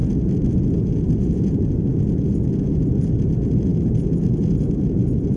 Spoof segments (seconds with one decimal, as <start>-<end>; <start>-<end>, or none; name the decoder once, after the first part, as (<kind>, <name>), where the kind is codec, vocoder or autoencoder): none